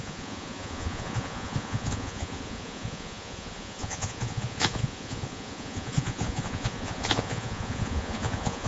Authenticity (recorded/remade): remade